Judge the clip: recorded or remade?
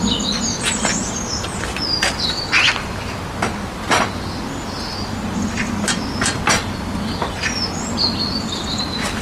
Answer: recorded